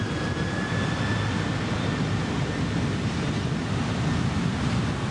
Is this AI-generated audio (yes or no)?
no